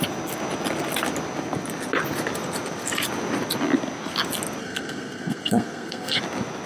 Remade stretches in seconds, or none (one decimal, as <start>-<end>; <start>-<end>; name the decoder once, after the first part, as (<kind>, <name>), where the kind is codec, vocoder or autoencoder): 4.6-6.2 (codec, SNAC)